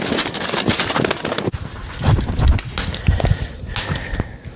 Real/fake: real